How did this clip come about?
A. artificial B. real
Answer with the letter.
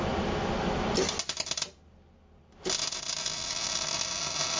B